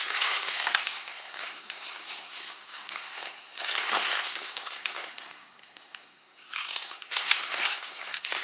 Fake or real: fake